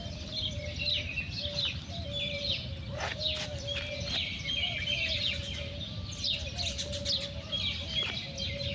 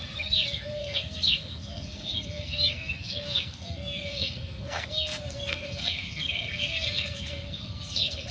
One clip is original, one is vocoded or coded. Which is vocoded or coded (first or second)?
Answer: second